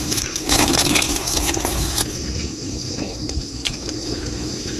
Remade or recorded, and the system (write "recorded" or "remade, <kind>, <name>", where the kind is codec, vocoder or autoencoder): remade, codec, SNAC